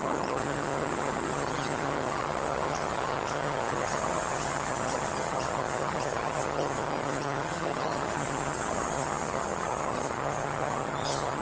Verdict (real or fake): fake